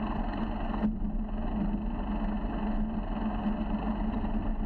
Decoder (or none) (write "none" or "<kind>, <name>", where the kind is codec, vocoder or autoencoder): none